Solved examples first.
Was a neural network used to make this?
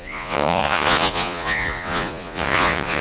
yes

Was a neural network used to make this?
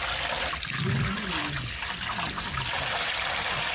no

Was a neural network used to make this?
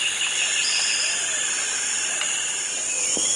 no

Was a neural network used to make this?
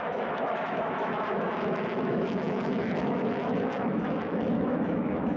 yes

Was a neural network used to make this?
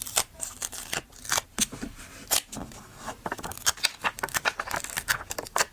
no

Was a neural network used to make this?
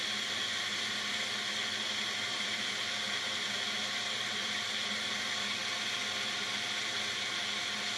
no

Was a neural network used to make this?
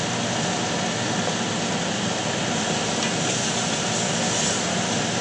no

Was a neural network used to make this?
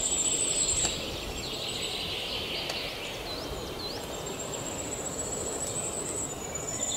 no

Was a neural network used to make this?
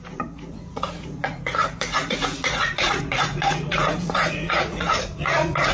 yes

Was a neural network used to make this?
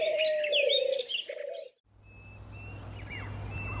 no